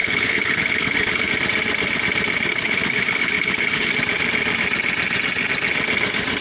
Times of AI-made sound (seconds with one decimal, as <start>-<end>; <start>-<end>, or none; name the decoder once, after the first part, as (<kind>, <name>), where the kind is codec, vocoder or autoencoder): 0.0-1.3 (codec, HILCodec); 2.5-3.9